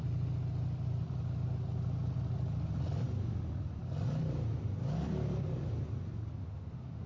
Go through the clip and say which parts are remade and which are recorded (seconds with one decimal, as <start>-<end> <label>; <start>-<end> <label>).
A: 0.0-6.4 recorded; 6.4-7.1 remade